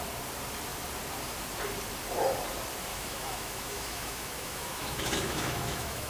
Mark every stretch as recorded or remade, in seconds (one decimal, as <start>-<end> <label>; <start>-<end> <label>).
0.0-2.9 recorded; 2.9-6.1 remade